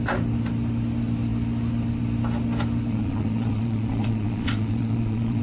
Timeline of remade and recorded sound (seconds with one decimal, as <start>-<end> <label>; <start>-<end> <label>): 0.0-2.9 recorded; 2.9-5.4 remade